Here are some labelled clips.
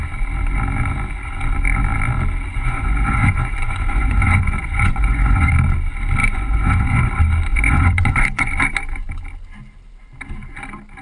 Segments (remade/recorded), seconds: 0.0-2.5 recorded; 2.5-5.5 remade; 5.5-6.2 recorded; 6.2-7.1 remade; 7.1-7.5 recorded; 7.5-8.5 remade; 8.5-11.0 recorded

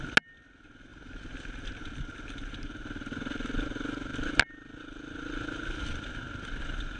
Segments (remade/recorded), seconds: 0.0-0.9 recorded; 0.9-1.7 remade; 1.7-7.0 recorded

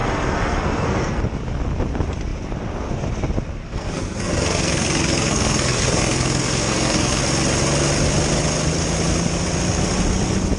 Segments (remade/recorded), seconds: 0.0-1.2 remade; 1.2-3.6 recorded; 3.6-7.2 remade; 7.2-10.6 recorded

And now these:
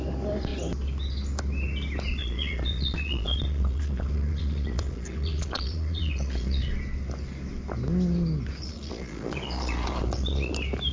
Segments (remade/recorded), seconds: 0.0-2.2 recorded; 2.2-6.7 remade; 6.7-8.6 recorded; 8.6-10.5 remade; 10.5-10.9 recorded

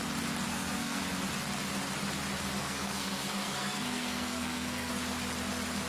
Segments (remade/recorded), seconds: 0.0-0.5 recorded; 0.5-1.0 remade; 1.0-2.6 recorded; 2.6-4.9 remade; 4.9-5.9 recorded

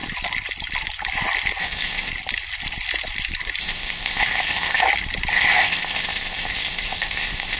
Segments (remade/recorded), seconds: 0.0-1.6 recorded; 1.6-2.1 remade; 2.1-3.6 recorded; 3.6-4.8 remade; 4.8-5.3 recorded; 5.3-7.6 remade